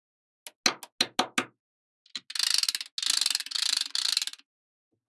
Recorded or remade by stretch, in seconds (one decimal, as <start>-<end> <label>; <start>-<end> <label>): 0.0-5.1 recorded